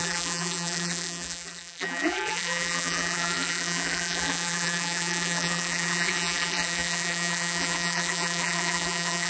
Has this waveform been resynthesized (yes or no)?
yes